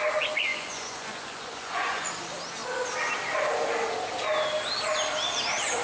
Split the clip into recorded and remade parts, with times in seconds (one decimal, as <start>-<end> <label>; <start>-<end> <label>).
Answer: 0.0-0.5 recorded; 0.5-2.1 remade; 2.1-5.8 recorded